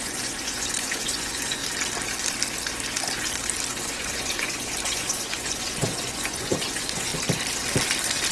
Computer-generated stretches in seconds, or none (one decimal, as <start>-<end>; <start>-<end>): 0.0-1.6; 3.7-7.1